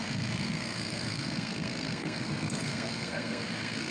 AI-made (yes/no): yes